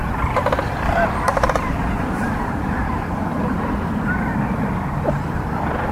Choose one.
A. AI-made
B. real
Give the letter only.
A